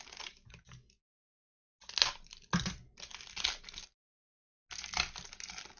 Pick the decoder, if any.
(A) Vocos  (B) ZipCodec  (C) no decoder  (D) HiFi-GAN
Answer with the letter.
C